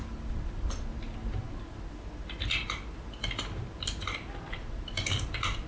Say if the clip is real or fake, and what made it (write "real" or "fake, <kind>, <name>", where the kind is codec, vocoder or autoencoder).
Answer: real